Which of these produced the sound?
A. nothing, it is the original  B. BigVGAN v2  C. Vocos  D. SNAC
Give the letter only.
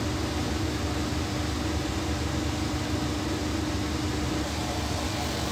A